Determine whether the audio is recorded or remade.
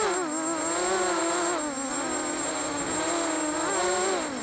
recorded